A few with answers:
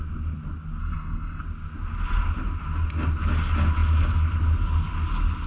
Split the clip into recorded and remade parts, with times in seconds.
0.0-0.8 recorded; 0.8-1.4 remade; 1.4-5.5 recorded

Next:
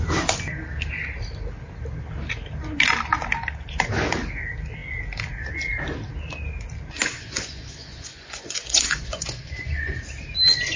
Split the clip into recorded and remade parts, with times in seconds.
0.0-7.1 recorded; 7.1-10.0 remade; 10.0-10.8 recorded

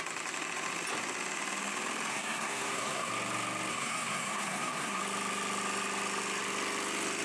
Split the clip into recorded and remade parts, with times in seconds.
0.0-2.1 recorded; 2.1-3.1 remade; 3.1-3.7 recorded; 3.7-5.0 remade; 5.0-7.2 recorded